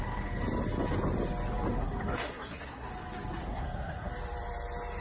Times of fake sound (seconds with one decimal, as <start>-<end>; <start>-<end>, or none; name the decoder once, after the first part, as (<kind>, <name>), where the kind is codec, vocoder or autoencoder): 1.7-2.9 (codec, SNAC); 3.4-4.1